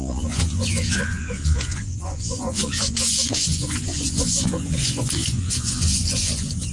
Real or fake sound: fake